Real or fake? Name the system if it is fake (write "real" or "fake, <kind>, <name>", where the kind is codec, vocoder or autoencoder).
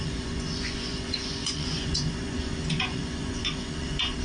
fake, vocoder, Vocos